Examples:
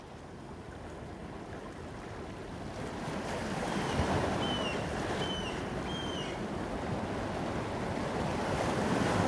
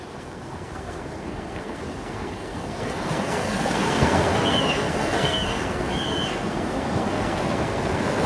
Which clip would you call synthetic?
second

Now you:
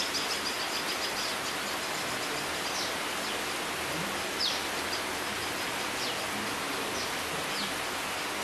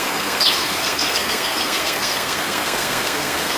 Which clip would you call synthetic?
second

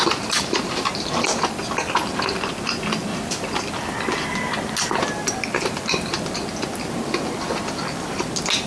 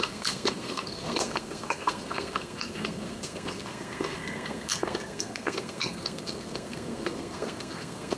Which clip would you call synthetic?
second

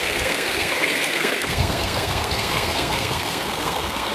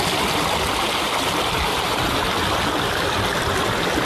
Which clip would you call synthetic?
first